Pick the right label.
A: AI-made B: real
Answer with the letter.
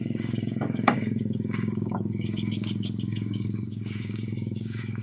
A